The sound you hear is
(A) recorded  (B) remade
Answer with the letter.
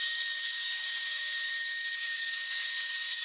B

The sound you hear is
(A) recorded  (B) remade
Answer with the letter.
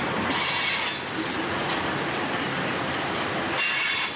A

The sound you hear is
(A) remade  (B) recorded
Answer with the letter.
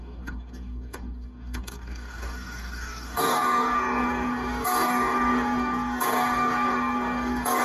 A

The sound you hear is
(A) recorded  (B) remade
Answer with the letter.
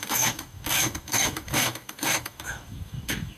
B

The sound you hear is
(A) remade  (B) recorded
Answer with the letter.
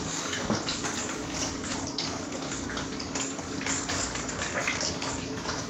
A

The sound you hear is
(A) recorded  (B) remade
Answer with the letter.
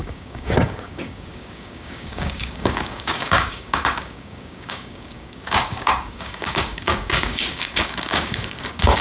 B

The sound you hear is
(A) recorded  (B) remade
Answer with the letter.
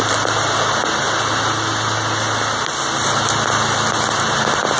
A